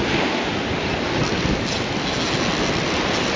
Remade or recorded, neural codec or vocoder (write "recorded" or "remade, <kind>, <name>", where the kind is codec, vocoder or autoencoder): recorded